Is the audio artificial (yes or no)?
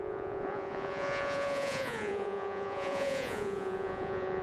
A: yes